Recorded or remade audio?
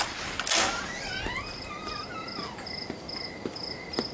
recorded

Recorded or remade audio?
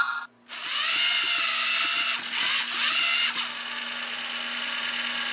recorded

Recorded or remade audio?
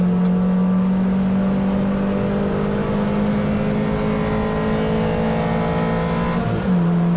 recorded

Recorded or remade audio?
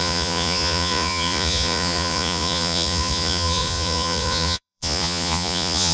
remade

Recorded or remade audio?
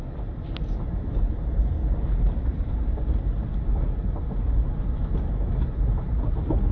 recorded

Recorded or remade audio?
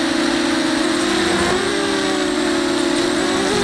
recorded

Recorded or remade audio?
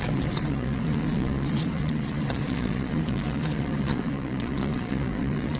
remade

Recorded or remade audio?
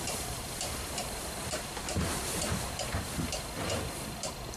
remade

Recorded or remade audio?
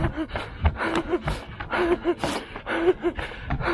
recorded